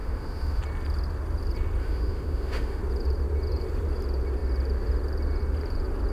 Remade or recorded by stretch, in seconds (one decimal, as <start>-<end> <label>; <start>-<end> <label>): 0.0-0.6 remade; 0.6-1.8 recorded; 1.8-2.8 remade; 2.8-6.1 recorded

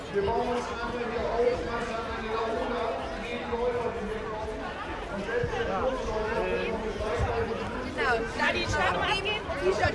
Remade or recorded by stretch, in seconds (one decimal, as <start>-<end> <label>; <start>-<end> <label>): 0.0-9.9 recorded

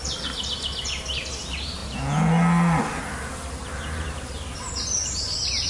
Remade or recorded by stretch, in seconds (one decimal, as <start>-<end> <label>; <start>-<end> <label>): 0.0-5.7 recorded

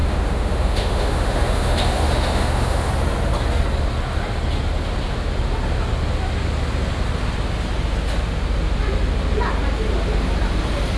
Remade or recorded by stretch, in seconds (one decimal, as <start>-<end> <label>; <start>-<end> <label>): 0.0-2.9 remade; 2.9-11.0 recorded

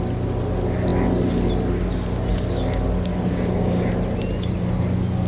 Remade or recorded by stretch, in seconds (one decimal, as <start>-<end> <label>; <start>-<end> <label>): 0.0-3.1 recorded; 3.1-3.9 remade; 3.9-5.3 recorded

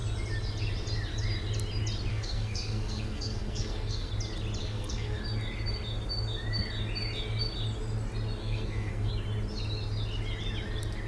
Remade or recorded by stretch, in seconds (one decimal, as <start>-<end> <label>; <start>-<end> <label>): 0.0-2.1 recorded; 2.1-4.1 remade; 4.1-4.6 recorded; 4.6-5.2 remade; 5.2-8.4 recorded; 8.4-9.1 remade; 9.1-11.1 recorded

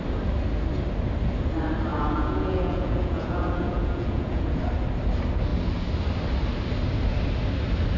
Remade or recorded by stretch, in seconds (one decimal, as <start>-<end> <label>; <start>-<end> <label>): 0.0-1.9 recorded; 1.9-4.6 remade; 4.6-8.0 recorded